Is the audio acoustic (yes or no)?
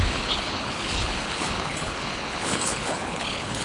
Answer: no